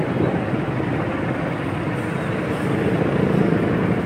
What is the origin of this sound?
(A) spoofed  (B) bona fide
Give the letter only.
B